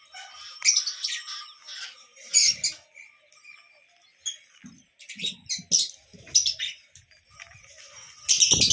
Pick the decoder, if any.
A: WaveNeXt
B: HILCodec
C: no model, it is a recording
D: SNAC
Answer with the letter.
C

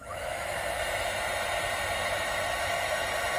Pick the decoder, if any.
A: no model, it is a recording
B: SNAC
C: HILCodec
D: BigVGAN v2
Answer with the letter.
A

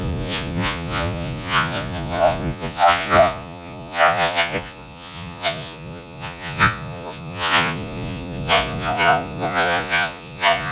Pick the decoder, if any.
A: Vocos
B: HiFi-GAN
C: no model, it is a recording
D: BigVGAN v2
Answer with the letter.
A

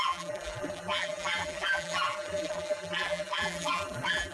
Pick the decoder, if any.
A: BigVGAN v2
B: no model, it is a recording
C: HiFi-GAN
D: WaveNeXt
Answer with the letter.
A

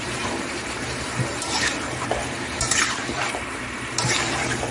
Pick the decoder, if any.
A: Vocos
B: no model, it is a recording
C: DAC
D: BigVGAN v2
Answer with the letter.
D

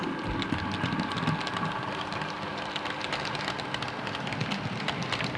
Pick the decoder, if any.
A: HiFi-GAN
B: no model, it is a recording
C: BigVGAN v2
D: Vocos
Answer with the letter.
B